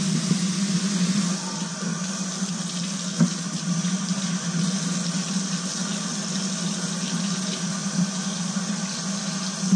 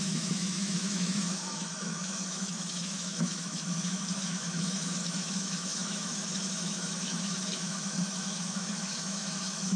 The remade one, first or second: second